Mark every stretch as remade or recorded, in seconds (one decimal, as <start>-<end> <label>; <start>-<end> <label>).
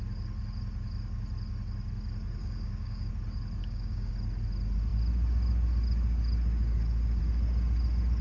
0.0-2.4 recorded; 2.4-3.1 remade; 3.1-3.6 recorded; 3.6-4.1 remade; 4.1-8.2 recorded